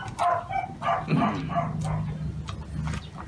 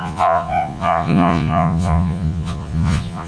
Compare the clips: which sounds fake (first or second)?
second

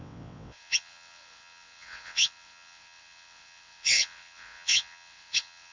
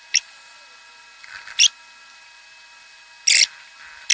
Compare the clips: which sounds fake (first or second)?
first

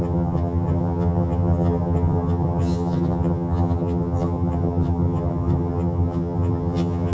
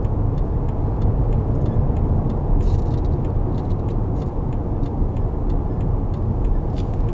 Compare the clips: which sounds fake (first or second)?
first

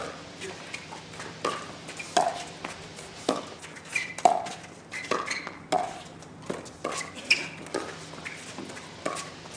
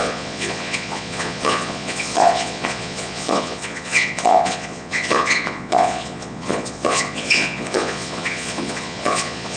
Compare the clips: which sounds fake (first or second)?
second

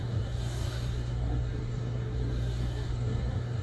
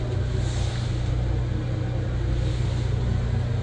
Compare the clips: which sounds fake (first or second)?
first